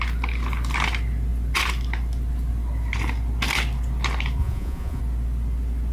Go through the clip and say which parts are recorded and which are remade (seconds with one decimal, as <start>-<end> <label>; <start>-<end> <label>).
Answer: 0.0-4.4 recorded; 4.4-5.0 remade; 5.0-5.9 recorded